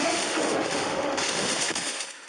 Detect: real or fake fake